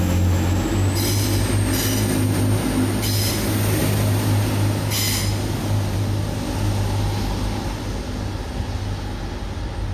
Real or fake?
real